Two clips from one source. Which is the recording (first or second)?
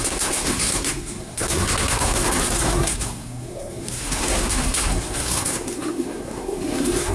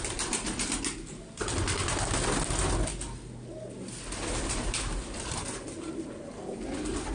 second